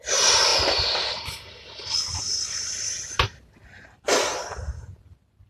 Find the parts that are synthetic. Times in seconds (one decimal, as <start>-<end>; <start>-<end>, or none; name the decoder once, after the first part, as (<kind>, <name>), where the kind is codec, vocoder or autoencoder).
none